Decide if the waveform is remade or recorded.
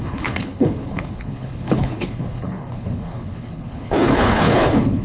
remade